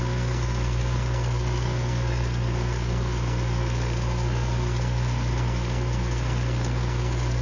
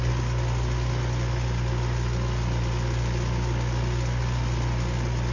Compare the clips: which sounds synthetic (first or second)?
first